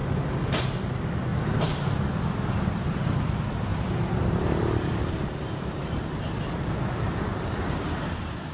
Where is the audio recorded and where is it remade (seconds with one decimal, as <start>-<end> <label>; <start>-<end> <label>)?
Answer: 0.0-8.5 recorded